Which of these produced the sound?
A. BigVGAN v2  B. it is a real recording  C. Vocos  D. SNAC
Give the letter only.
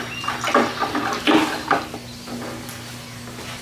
B